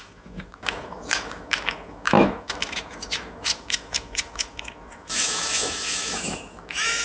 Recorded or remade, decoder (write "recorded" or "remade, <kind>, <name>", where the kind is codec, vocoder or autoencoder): remade, autoencoder, DAC-VAE